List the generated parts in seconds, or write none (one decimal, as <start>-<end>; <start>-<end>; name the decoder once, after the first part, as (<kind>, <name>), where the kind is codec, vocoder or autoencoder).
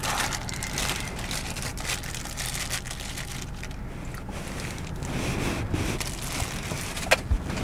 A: 0.0-1.7 (vocoder, BigVGAN v2); 5.7-7.6